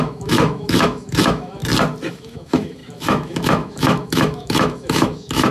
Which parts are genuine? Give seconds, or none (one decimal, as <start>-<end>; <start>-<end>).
1.6-2.1